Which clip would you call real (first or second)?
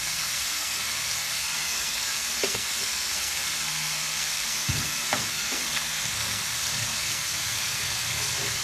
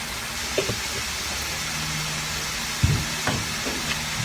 second